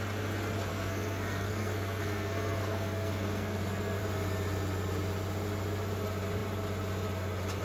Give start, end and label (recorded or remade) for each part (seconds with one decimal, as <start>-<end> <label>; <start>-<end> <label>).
0.0-0.7 recorded; 0.7-4.0 remade; 4.0-7.6 recorded